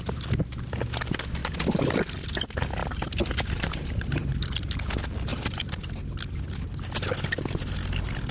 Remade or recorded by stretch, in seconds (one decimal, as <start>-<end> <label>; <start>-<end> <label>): 0.0-1.4 recorded; 1.4-2.0 remade; 2.0-2.8 recorded; 2.8-4.4 remade; 4.4-5.3 recorded; 5.3-6.0 remade; 6.0-8.3 recorded